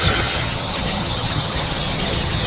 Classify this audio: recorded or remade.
remade